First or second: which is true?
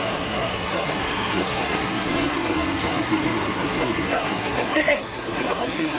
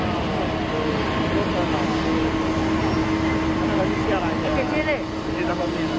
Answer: second